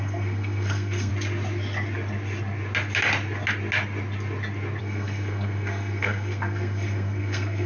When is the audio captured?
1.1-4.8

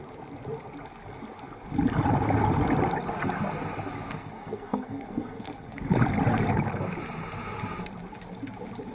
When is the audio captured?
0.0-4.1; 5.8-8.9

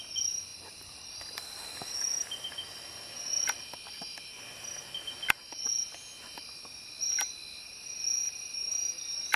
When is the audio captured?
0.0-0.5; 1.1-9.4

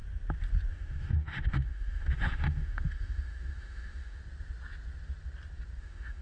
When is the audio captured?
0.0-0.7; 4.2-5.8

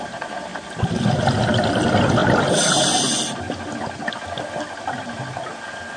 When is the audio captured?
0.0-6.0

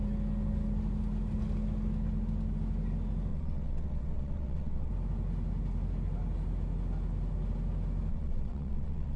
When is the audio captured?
0.0-3.3; 4.9-8.1

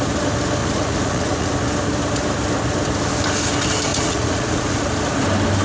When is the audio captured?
0.0-0.6; 1.5-3.9; 4.8-5.6

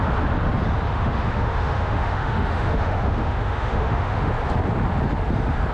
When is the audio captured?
0.0-0.9; 4.3-5.7